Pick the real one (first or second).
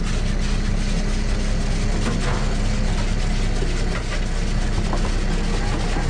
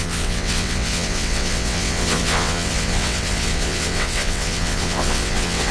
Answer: first